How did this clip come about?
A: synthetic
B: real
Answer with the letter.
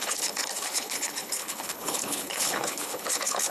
A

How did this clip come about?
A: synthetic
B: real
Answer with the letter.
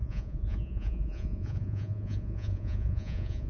A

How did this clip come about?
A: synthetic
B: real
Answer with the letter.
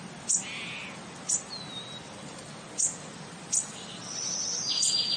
B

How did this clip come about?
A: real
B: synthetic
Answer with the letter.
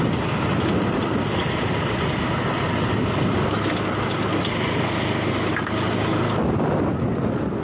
A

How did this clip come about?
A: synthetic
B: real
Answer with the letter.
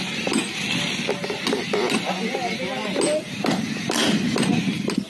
B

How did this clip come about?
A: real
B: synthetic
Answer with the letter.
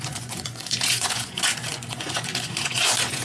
B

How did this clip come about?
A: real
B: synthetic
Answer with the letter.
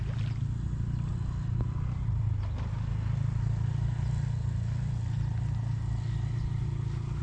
A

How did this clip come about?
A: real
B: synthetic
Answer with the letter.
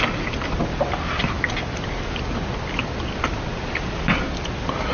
A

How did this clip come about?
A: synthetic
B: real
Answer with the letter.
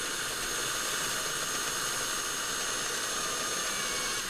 B